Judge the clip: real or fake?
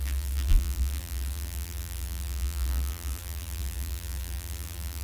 fake